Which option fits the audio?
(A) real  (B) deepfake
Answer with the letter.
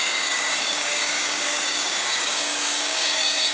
B